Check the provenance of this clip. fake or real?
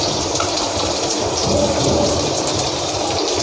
fake